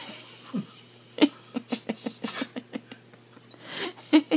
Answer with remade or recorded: recorded